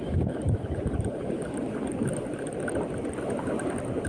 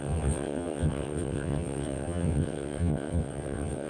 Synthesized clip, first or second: second